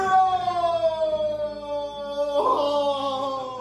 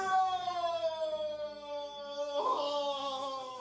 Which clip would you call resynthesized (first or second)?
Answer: second